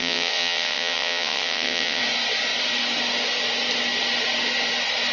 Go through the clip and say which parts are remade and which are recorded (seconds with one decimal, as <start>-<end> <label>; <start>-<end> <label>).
0.0-2.0 remade; 2.0-5.1 recorded